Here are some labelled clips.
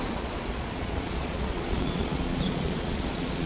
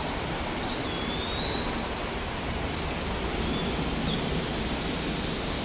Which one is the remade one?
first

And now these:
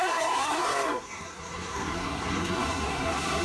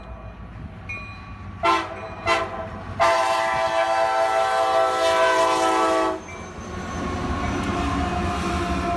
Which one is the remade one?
first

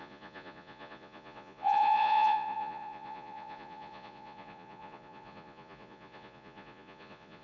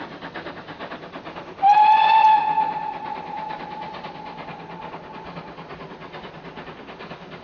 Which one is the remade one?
first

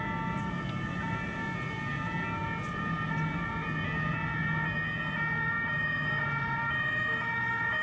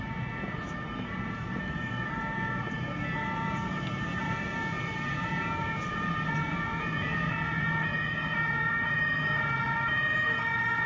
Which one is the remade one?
second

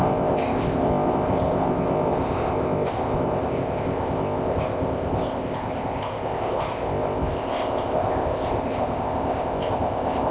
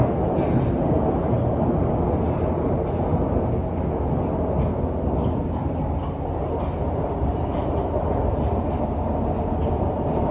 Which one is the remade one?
first